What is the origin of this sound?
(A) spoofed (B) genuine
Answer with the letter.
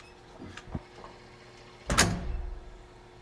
B